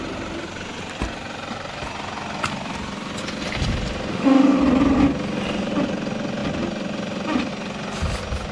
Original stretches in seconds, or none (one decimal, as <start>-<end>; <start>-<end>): 0.0-4.1; 4.6-8.5